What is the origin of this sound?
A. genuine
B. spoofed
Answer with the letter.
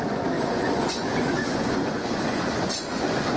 B